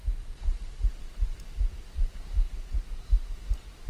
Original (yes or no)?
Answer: yes